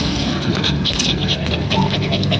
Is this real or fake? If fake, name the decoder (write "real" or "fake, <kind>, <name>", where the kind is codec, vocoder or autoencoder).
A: fake, codec, SNAC